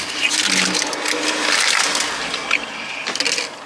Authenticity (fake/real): real